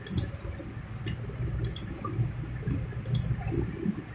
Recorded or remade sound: recorded